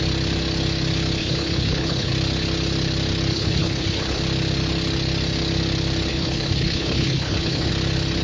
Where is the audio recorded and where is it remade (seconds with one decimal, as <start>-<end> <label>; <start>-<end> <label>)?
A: 0.0-1.2 recorded; 1.2-2.1 remade; 2.1-3.3 recorded; 3.3-4.2 remade; 4.2-6.1 recorded; 6.1-7.7 remade; 7.7-8.2 recorded